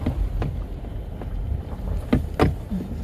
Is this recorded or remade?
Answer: recorded